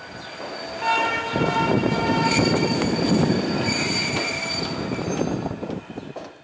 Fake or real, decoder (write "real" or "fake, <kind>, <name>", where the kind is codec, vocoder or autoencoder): real